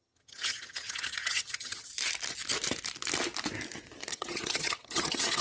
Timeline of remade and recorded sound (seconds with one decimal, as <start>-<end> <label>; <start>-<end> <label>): 0.0-1.9 remade; 1.9-4.1 recorded; 4.1-5.4 remade